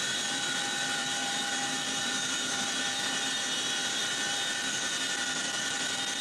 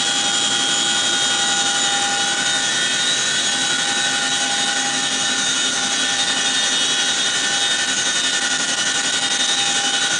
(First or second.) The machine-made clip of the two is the first